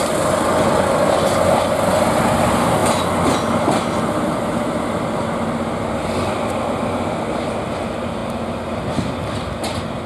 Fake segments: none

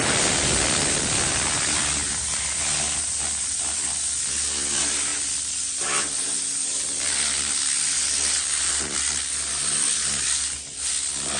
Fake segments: none

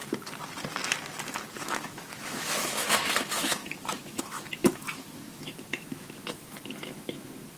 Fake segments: 1.6-7.6 (autoencoder, DAC-VAE)

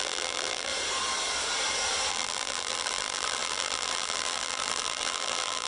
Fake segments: 0.0-0.7 (vocoder, BigVGAN v2); 2.1-5.7